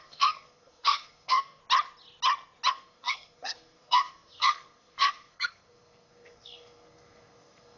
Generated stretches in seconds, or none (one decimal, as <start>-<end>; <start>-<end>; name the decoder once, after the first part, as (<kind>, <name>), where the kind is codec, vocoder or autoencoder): 0.0-1.6 (codec, SNAC); 2.7-7.8